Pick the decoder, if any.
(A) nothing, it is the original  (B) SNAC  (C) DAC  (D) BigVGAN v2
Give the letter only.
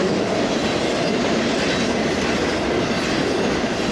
A